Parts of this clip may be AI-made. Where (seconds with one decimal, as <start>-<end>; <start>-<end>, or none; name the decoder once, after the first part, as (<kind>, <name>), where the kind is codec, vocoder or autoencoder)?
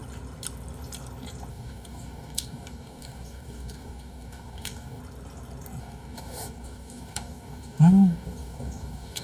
1.5-5.0 (codec, DAC); 5.8-9.2